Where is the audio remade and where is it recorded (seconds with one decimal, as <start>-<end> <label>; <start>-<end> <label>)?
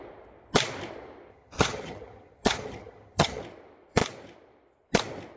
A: 0.0-1.3 recorded; 1.3-3.4 remade; 3.4-5.4 recorded